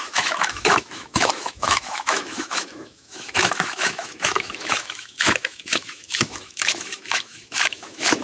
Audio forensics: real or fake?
fake